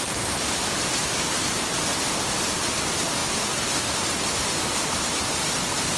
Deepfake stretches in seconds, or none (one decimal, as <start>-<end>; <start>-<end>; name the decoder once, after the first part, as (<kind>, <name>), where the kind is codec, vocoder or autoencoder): none